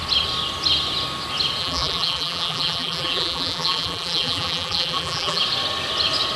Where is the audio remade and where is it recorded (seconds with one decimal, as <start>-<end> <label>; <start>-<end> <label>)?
0.0-1.6 recorded; 1.6-5.4 remade; 5.4-6.4 recorded